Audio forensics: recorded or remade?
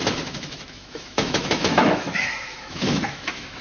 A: remade